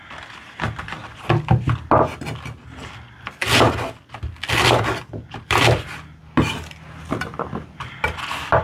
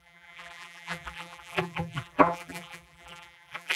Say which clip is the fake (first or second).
second